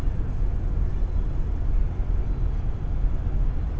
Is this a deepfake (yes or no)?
no